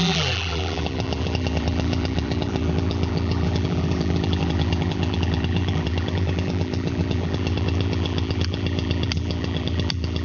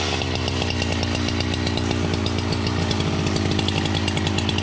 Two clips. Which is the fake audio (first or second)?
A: first